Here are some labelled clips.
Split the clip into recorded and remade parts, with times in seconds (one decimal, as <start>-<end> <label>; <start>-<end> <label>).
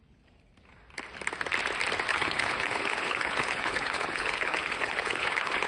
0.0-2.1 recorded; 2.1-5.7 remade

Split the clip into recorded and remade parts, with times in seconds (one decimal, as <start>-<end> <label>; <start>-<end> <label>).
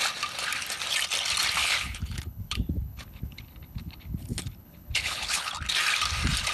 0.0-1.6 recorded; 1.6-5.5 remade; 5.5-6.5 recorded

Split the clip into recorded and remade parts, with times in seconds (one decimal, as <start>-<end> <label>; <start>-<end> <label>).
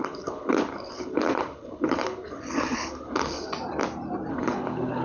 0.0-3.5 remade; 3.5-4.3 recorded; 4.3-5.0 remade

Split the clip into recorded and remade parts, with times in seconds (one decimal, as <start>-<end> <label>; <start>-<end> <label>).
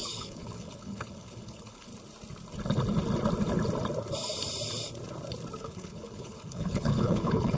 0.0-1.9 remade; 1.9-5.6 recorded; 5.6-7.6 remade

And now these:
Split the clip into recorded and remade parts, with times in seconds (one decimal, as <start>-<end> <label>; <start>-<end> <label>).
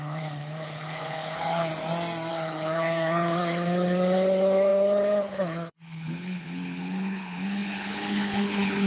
0.0-1.7 remade; 1.7-2.3 recorded; 2.3-8.9 remade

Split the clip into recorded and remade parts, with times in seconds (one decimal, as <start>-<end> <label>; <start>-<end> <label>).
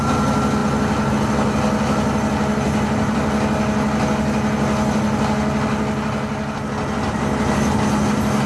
0.0-8.5 recorded